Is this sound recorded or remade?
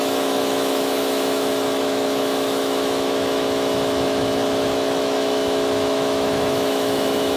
remade